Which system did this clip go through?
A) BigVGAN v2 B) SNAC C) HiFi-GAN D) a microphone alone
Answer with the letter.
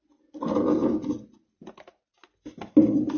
D